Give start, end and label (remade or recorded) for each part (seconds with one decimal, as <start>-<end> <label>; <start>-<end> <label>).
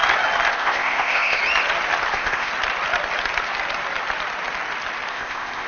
0.0-0.5 recorded; 0.5-1.4 remade; 1.4-2.1 recorded; 2.1-2.5 remade; 2.5-5.1 recorded; 5.1-5.7 remade